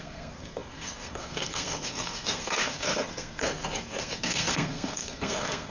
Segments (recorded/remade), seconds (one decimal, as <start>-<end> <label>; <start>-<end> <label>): 0.0-5.7 remade